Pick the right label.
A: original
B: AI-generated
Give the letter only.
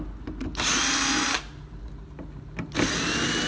A